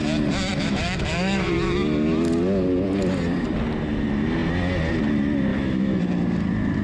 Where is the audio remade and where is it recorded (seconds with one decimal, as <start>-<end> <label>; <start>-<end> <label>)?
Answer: 0.0-0.5 recorded; 0.5-1.5 remade; 1.5-5.5 recorded; 5.5-6.0 remade; 6.0-6.8 recorded